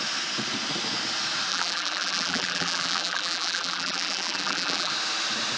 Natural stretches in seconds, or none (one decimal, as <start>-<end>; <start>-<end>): 0.0-1.5; 4.9-5.6